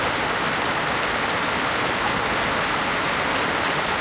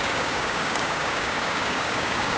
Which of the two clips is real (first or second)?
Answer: first